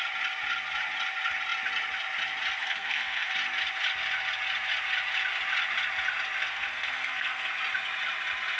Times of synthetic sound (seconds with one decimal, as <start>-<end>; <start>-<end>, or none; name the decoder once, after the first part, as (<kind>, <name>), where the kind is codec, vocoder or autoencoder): 2.6-3.3 (codec, SNAC); 6.4-7.5